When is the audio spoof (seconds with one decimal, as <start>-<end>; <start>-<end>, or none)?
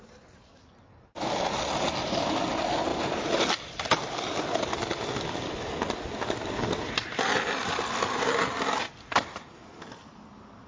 none